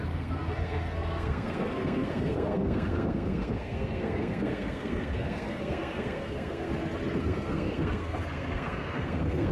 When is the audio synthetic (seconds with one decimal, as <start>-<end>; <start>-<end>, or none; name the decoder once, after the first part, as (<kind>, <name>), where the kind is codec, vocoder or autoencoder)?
0.0-6.7 (codec, SNAC); 7.2-9.5